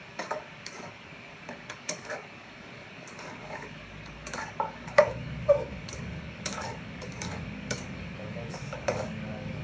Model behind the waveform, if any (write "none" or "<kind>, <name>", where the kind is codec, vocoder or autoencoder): codec, DAC